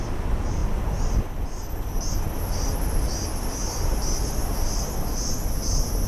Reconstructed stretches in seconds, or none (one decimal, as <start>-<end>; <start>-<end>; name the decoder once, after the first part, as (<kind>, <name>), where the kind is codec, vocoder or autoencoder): 3.6-4.2 (vocoder, BigVGAN v2)